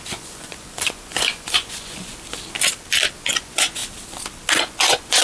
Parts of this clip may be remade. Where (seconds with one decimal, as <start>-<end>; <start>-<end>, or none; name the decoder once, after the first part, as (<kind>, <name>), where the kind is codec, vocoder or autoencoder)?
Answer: 0.0-2.1 (vocoder, Vocos); 3.4-3.8; 4.6-5.2